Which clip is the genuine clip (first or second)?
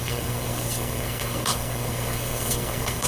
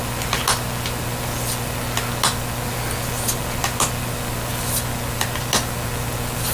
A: second